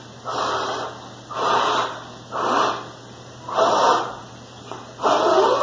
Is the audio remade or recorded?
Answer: recorded